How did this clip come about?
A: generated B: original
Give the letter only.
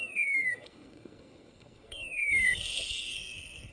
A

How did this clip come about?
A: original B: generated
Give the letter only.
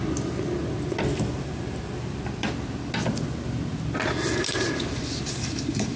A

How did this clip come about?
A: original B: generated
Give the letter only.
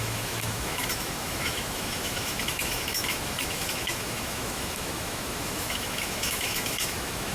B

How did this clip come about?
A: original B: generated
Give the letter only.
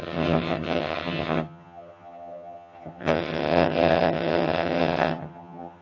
B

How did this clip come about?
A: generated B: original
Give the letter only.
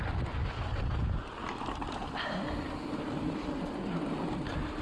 B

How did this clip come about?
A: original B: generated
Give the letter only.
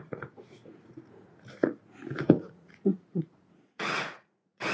B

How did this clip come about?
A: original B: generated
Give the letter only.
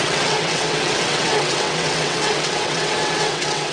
B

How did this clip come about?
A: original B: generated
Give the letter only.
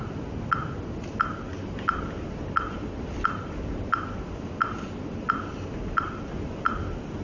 A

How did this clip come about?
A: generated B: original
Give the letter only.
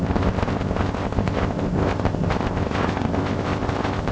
A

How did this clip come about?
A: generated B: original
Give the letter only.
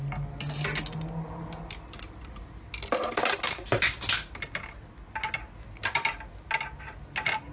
B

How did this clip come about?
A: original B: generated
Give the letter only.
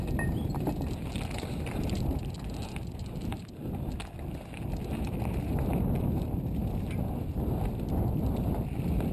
A